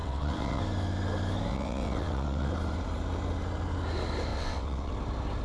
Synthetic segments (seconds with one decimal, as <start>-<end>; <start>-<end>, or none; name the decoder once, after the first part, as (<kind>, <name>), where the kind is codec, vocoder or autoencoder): 0.0-0.6 (vocoder, WaveNeXt); 1.5-2.5; 4.3-4.9